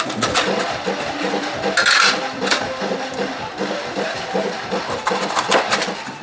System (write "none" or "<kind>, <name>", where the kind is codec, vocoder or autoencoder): none